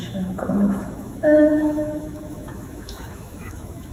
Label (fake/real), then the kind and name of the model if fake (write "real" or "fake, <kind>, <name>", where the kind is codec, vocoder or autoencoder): fake, autoencoder, DAC-VAE